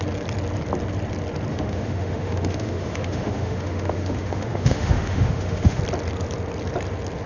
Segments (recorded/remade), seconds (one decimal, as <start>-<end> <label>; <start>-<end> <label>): 0.0-1.5 recorded; 1.5-5.8 remade; 5.8-7.3 recorded

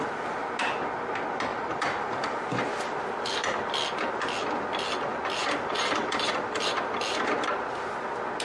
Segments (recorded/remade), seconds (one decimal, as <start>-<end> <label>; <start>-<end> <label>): 0.0-1.5 recorded; 1.5-2.4 remade; 2.4-5.4 recorded; 5.4-6.7 remade; 6.7-8.4 recorded